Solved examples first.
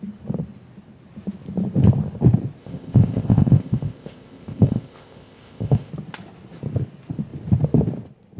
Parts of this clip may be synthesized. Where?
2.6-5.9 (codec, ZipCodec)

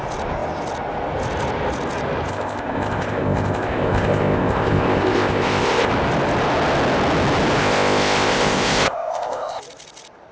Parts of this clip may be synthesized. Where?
2.3-5.9 (codec, ZipCodec); 7.6-9.6

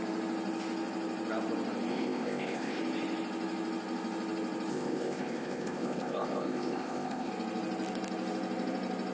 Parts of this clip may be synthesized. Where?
1.9-2.8 (codec, ZipCodec); 4.7-7.3

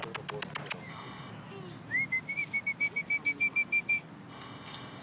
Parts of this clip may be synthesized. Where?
0.9-1.3 (codec, ZipCodec); 4.3-5.0

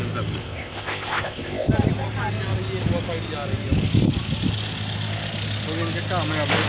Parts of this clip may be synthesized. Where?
0.4-1.7 (codec, ZipCodec)

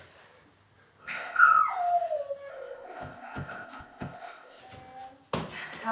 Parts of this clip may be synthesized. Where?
1.0-1.6 (codec, ZipCodec); 2.5-4.6